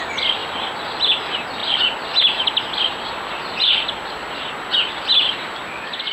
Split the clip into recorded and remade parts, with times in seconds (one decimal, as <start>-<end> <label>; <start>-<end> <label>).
0.0-6.1 recorded